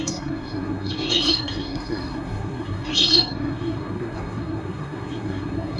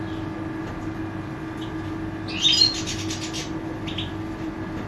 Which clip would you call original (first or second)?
second